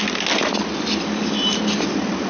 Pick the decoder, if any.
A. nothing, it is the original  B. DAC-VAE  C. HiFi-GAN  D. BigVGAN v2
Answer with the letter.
A